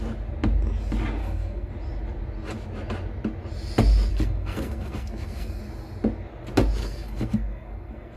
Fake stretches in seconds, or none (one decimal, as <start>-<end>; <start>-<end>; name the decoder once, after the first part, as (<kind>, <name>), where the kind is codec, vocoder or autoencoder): 1.2-1.7 (codec, SNAC); 4.1-5.6; 6.8-8.2